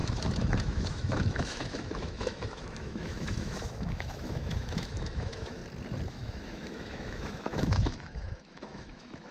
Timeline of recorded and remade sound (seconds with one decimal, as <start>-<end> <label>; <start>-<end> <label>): 0.0-5.6 remade; 5.6-6.1 recorded; 6.1-9.3 remade